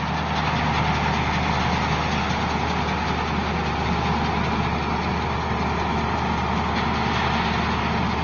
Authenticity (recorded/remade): recorded